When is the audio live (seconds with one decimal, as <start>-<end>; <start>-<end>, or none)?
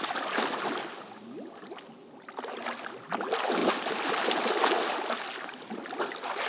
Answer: 0.0-6.5